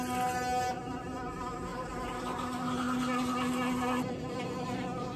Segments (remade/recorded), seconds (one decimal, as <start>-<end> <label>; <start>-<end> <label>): 0.0-5.2 recorded